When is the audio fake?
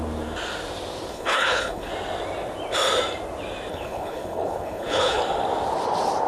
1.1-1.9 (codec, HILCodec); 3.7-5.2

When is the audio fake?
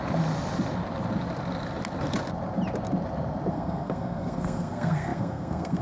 3.5-5.8 (codec, SNAC)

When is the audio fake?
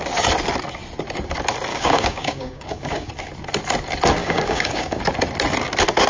1.7-3.1 (codec, DAC); 4.2-5.0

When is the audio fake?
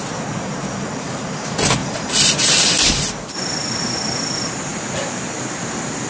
1.8-3.3 (vocoder, BigVGAN v2)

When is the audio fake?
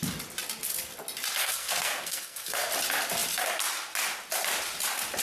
1.4-2.7 (codec, SNAC)